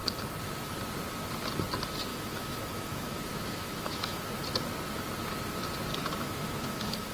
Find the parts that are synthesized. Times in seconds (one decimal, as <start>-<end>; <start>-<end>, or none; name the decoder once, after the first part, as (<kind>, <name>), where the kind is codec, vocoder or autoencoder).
2.1-4.2 (autoencoder, DAC-VAE); 5.9-7.1